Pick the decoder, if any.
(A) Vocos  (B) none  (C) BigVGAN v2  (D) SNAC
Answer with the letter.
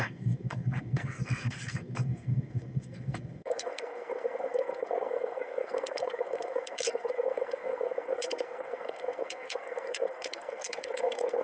D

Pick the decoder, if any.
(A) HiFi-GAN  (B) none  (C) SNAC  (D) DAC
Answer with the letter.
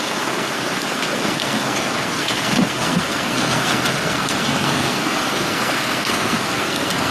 C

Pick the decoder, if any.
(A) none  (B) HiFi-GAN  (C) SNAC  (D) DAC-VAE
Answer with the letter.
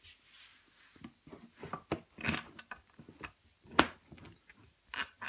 A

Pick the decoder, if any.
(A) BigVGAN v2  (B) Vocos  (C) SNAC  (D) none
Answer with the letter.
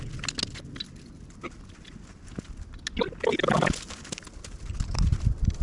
D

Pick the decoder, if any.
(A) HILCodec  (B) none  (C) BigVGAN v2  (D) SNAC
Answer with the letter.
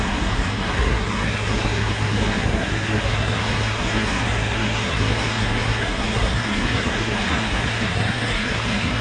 D